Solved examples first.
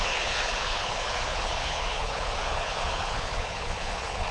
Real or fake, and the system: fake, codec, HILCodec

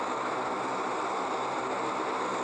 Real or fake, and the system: real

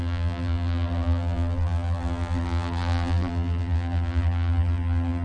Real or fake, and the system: fake, vocoder, BigVGAN v2